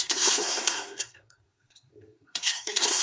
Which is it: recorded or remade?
remade